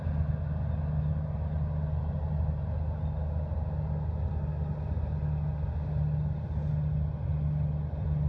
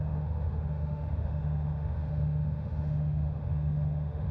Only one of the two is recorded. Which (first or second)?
first